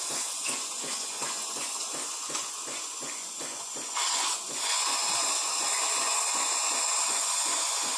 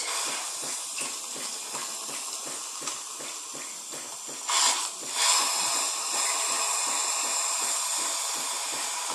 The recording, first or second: second